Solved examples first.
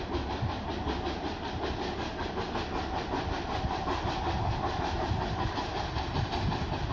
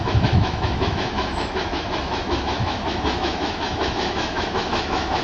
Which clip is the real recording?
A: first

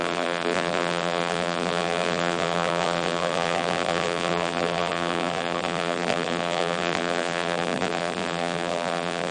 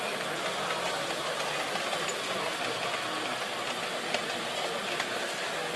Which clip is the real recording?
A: second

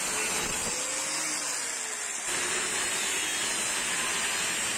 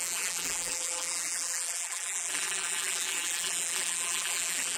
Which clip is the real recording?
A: first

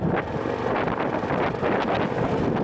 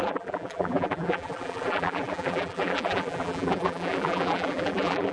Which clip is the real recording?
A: first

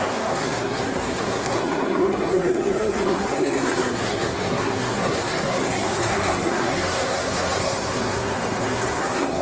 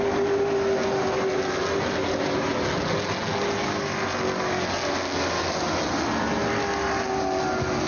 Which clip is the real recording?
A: second